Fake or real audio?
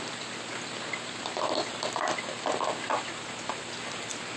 real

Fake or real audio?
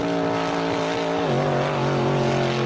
real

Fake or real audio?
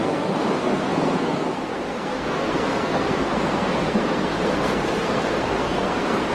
fake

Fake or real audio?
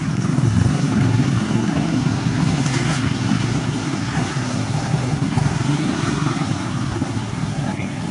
fake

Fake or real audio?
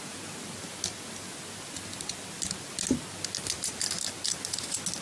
real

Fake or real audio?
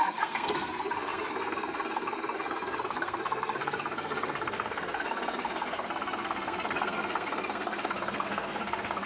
fake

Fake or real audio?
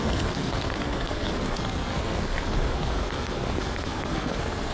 fake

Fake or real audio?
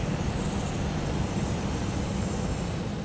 real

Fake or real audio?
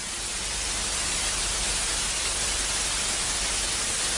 real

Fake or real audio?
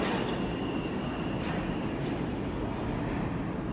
real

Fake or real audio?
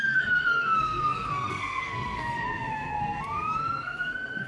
fake